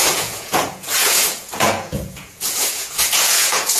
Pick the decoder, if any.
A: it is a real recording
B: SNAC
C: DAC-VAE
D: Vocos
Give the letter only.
D